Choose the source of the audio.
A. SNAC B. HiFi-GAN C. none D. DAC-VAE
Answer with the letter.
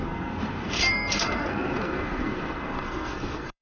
A